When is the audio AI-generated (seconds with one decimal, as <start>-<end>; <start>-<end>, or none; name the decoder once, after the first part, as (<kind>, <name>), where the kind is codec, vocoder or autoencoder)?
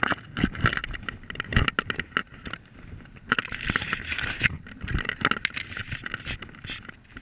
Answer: none